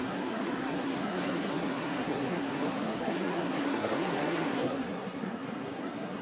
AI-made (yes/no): yes